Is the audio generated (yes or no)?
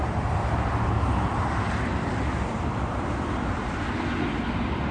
no